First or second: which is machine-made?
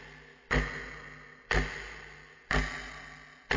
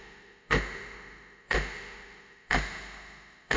second